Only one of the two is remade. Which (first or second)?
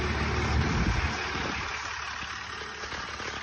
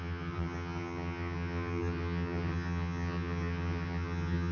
second